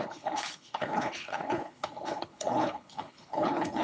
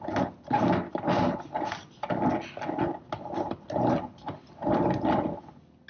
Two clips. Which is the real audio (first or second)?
second